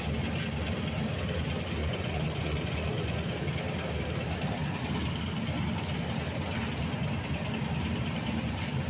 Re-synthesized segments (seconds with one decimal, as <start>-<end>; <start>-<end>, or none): 1.8-3.3